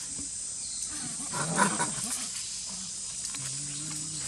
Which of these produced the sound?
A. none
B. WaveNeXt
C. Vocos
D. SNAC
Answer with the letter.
A